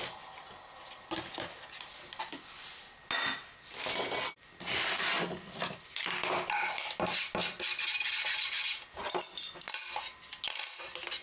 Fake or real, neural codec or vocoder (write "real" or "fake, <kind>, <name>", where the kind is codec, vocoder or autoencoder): real